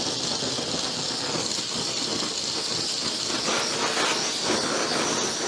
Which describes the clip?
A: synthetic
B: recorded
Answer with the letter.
B